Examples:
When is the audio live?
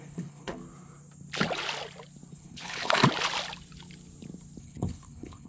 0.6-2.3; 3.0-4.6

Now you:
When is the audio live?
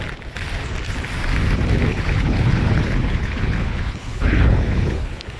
0.0-1.9